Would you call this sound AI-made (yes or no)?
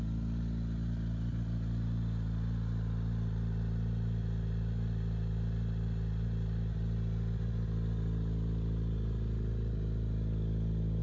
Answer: no